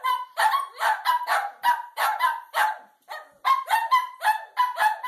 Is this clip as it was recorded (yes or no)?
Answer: yes